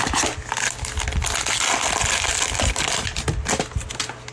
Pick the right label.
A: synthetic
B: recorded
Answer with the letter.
B